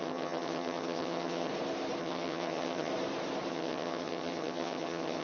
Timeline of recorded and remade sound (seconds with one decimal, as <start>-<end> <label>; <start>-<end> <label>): 0.0-1.5 remade; 1.5-2.0 recorded; 2.0-2.9 remade; 2.9-3.5 recorded; 3.5-5.2 remade